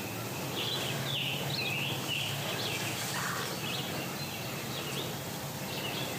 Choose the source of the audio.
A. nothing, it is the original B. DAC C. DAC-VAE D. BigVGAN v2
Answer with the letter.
A